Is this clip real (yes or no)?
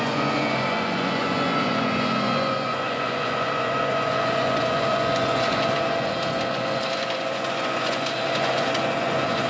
no